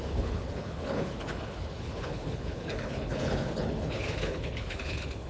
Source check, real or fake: fake